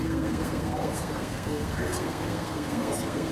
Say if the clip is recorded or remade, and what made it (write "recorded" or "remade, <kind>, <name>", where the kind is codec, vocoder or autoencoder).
remade, codec, SNAC